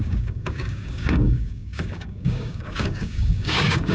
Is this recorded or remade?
remade